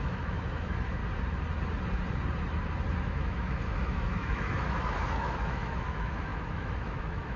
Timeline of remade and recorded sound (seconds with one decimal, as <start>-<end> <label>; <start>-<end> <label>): 0.0-1.0 remade; 1.0-3.0 recorded; 3.0-7.4 remade